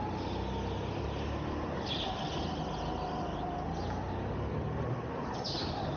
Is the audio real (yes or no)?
yes